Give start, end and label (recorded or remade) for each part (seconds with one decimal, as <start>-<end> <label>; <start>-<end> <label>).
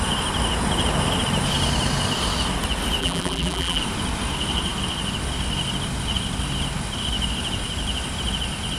0.0-3.0 recorded; 3.0-3.8 remade; 3.8-8.8 recorded